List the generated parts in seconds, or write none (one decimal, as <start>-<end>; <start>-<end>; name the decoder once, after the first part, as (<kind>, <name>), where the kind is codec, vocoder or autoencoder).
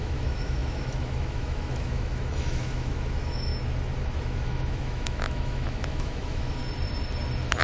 0.0-3.5 (autoencoder, DAC-VAE); 4.0-6.6